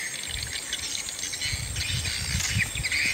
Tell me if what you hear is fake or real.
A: real